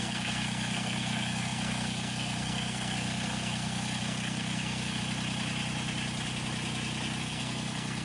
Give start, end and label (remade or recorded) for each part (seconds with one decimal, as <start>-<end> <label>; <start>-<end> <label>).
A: 0.0-5.0 remade; 5.0-7.2 recorded; 7.2-8.0 remade